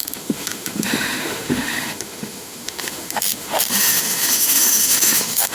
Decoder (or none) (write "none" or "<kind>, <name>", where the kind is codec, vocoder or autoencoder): autoencoder, DAC-VAE